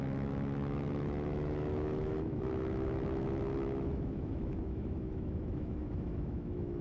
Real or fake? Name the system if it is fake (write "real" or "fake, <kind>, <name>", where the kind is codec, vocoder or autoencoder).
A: fake, autoencoder, DAC-VAE